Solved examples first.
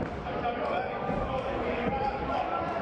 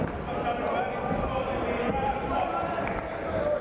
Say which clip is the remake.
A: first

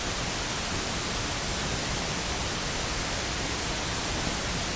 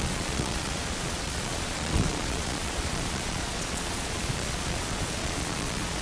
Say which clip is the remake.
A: second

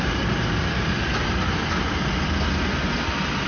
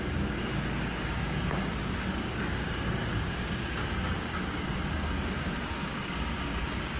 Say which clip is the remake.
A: second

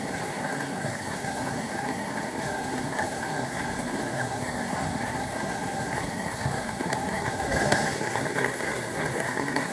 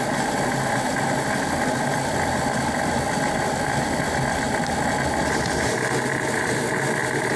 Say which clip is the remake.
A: first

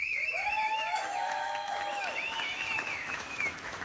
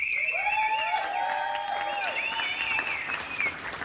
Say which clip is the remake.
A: first